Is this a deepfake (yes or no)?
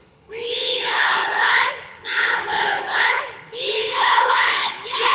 yes